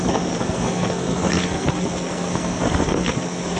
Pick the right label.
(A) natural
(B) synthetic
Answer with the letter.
B